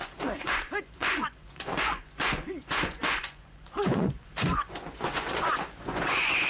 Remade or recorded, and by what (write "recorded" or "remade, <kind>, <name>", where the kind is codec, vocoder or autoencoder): remade, vocoder, Vocos